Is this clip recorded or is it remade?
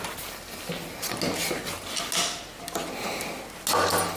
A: recorded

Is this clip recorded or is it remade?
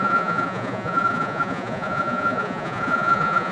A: remade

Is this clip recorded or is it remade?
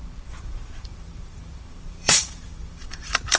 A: remade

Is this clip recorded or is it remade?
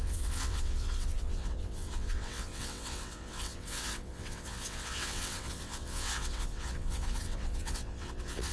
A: remade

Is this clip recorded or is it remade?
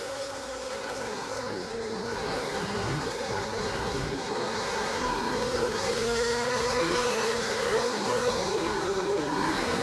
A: remade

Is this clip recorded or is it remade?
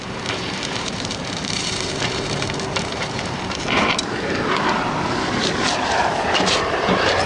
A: remade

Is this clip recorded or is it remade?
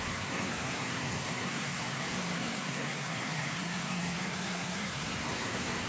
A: remade